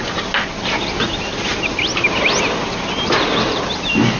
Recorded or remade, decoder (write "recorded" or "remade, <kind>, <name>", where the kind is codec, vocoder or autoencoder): recorded